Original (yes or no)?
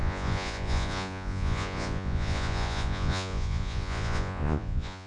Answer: no